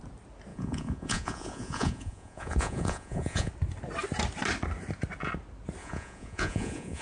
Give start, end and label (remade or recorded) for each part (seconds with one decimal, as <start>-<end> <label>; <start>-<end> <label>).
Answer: 0.0-0.5 recorded; 0.5-3.5 remade; 3.5-5.8 recorded; 5.8-7.0 remade